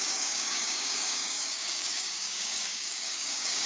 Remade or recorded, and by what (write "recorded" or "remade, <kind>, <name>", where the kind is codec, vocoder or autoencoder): remade, codec, DAC